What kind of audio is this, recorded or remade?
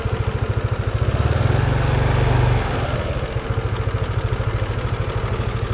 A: recorded